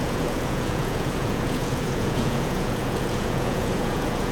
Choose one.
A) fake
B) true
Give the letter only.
A